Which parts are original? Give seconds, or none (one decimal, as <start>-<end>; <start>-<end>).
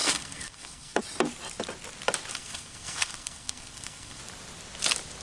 1.0-2.3; 4.2-5.2